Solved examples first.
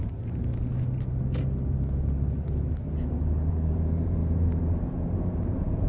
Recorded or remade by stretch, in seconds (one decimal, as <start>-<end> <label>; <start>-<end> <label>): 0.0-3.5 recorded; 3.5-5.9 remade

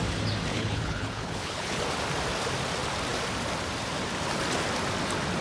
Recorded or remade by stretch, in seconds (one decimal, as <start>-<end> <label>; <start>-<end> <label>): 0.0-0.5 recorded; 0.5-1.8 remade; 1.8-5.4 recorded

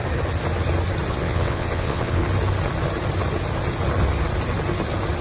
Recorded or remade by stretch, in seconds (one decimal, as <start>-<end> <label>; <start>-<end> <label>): 0.0-1.1 recorded; 1.1-2.2 remade; 2.2-5.2 recorded

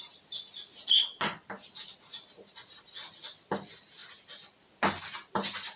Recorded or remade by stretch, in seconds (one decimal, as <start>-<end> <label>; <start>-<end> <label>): 0.0-5.8 recorded

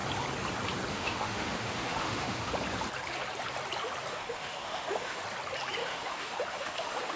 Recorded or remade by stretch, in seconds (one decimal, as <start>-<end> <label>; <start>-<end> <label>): 0.0-0.9 recorded; 0.9-2.5 remade; 2.5-4.1 recorded; 4.1-5.2 remade; 5.2-5.8 recorded; 5.8-7.2 remade